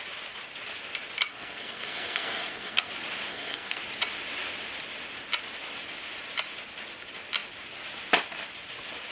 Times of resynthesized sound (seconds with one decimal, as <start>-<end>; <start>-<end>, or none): 1.3-2.9; 3.3-3.8